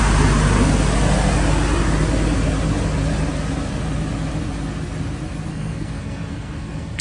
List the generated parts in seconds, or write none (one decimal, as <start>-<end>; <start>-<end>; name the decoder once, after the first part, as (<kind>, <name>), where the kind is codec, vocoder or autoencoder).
5.5-7.0 (codec, SNAC)